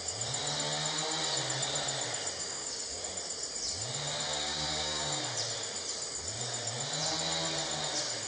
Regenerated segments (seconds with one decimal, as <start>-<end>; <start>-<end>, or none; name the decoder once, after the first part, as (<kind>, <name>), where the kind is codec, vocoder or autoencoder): 2.4-3.0 (codec, DAC); 4.4-5.2